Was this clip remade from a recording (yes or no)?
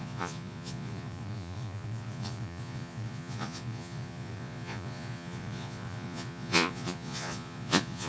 yes